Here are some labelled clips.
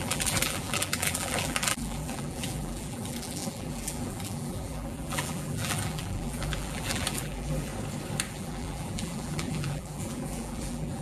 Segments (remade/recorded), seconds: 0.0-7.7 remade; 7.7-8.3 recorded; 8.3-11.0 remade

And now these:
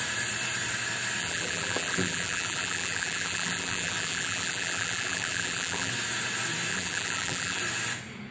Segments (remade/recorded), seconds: 0.0-1.2 recorded; 1.2-5.9 remade; 5.9-6.7 recorded; 6.7-7.6 remade; 7.6-8.3 recorded